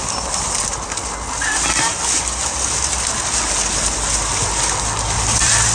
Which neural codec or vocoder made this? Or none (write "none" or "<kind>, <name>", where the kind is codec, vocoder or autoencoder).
none